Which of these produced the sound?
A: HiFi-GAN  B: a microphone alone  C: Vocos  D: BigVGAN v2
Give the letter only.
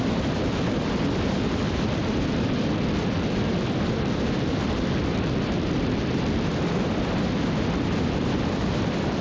D